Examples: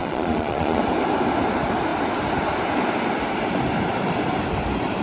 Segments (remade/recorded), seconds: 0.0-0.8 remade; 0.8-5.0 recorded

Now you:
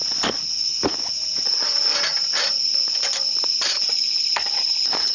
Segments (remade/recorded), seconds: 0.0-5.1 recorded

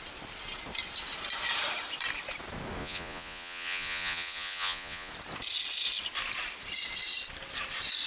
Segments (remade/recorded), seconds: 0.0-2.8 recorded; 2.8-5.1 remade; 5.1-8.1 recorded

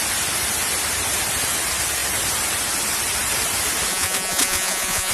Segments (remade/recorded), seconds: 0.0-3.9 recorded; 3.9-5.1 remade